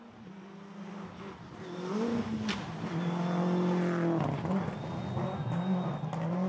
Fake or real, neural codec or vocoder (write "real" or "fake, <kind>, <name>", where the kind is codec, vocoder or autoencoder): real